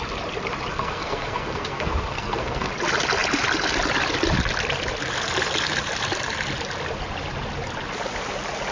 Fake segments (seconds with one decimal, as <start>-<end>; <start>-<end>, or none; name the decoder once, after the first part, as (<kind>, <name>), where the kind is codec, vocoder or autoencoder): 0.7-2.7 (codec, SNAC)